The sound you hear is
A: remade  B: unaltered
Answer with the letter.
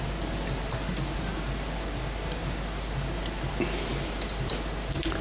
B